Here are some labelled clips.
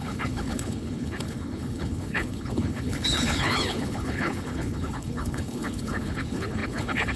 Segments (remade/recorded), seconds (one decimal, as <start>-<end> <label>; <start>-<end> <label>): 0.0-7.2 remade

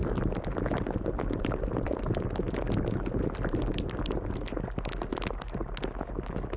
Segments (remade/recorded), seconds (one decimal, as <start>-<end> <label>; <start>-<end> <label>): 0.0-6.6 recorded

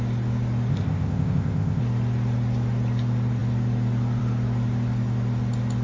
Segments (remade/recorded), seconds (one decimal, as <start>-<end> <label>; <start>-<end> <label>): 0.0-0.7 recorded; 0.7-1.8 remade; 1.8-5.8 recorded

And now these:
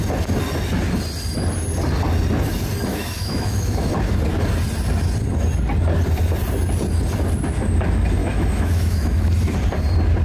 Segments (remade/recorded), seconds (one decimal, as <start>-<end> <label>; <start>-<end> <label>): 0.0-2.9 recorded; 2.9-3.9 remade; 3.9-8.2 recorded; 8.2-9.3 remade; 9.3-10.2 recorded

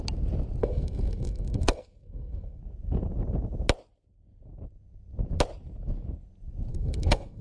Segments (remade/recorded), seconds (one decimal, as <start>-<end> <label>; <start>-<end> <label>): 0.0-0.6 recorded; 0.6-2.6 remade; 2.6-6.7 recorded; 6.7-7.4 remade